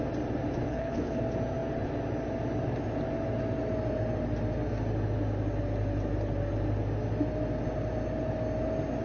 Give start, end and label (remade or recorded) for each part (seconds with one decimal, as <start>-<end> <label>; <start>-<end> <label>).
0.0-0.7 recorded; 0.7-1.2 remade; 1.2-9.0 recorded

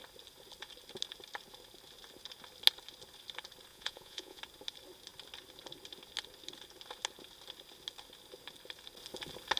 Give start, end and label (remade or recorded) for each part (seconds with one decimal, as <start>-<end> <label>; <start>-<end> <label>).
0.0-3.7 recorded; 3.7-4.4 remade; 4.4-9.6 recorded

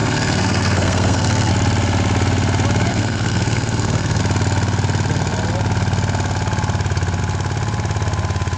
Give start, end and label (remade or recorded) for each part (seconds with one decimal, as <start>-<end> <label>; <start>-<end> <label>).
0.0-1.5 remade; 1.5-2.9 recorded; 2.9-4.2 remade; 4.2-8.6 recorded

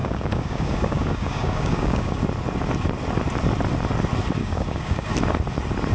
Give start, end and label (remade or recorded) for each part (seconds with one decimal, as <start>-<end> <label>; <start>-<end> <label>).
0.0-2.2 remade; 2.2-4.4 recorded; 4.4-5.1 remade; 5.1-5.9 recorded

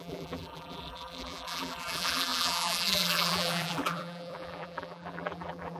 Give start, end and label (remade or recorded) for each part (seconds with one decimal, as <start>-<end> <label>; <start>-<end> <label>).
0.0-5.8 remade

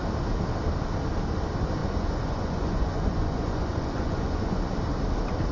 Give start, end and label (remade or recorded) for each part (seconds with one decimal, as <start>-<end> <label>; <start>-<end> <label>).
0.0-1.8 recorded; 1.8-4.6 remade; 4.6-5.5 recorded

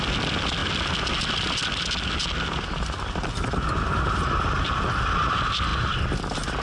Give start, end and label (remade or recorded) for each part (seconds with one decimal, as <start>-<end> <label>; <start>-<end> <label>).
0.0-6.6 recorded

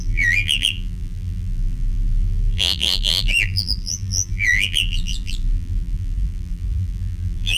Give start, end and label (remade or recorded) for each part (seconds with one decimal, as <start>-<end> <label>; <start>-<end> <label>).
0.0-7.6 remade